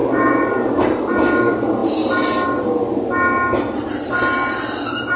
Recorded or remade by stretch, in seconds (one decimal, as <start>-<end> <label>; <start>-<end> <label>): 0.0-1.0 remade; 1.0-5.2 recorded